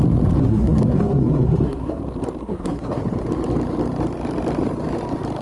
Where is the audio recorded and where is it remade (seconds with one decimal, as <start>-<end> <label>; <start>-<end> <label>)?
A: 0.0-0.4 recorded; 0.4-2.0 remade; 2.0-2.4 recorded; 2.4-3.0 remade; 3.0-5.4 recorded